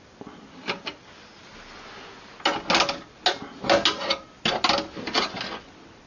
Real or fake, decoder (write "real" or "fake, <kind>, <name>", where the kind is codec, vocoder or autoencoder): real